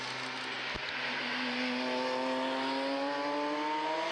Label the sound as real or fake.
real